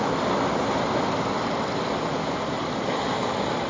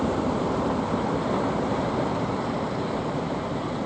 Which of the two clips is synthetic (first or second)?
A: second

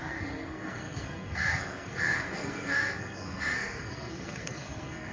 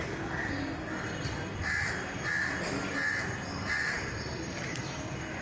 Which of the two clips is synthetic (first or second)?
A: first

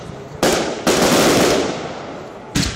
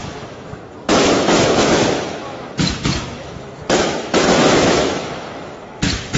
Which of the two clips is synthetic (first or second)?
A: second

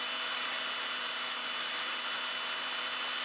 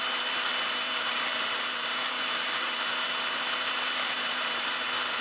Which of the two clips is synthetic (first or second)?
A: second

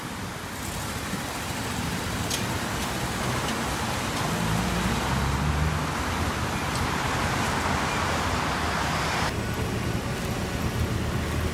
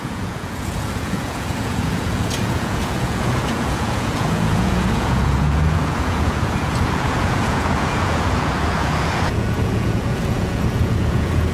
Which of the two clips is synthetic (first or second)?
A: second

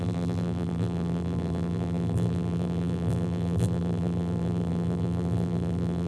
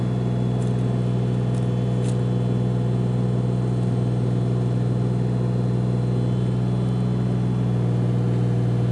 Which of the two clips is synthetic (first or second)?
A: first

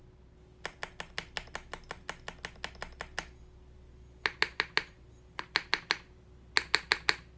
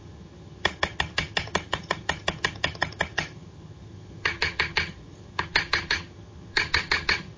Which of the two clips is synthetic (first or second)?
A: second